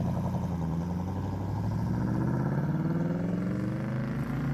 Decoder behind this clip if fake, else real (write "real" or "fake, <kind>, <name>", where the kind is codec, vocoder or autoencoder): real